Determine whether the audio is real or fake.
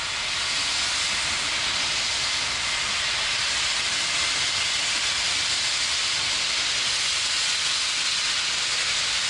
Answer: real